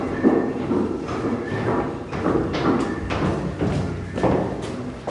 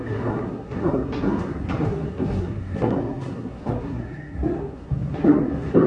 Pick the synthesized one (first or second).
second